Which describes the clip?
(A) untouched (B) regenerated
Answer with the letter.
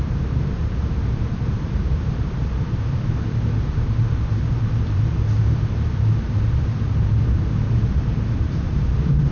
B